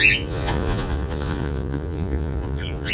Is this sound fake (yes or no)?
yes